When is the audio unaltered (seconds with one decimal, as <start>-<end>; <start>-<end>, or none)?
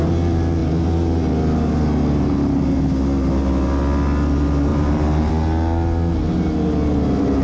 0.0-4.7; 5.3-7.4